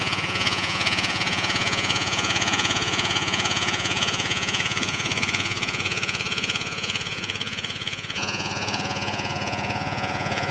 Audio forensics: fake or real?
fake